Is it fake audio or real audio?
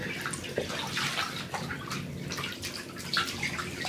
real